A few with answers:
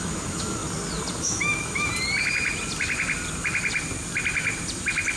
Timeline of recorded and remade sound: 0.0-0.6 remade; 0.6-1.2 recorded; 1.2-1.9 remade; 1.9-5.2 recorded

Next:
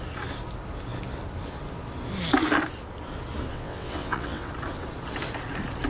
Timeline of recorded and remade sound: 0.0-3.5 recorded; 3.5-4.5 remade; 4.5-5.9 recorded